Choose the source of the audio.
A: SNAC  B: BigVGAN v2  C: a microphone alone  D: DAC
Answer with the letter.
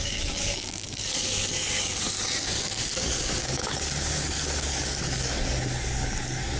D